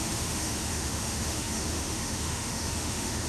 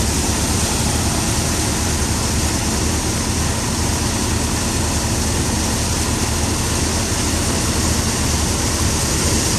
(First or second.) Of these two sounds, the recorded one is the second